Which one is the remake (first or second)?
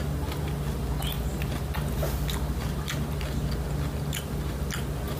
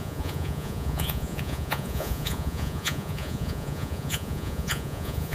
second